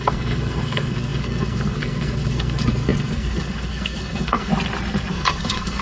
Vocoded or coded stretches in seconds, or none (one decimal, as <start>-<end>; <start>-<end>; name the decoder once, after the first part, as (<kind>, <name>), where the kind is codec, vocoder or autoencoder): 0.0-4.5 (codec, SNAC); 5.1-5.8